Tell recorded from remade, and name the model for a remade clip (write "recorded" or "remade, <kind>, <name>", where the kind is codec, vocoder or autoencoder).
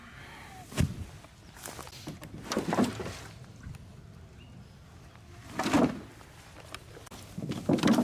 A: recorded